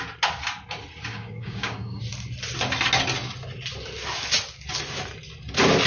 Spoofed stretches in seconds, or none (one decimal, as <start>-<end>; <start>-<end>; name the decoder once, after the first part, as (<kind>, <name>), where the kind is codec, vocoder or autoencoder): 1.1-2.0 (codec, DAC)